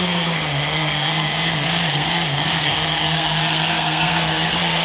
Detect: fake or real fake